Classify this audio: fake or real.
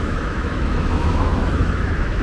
fake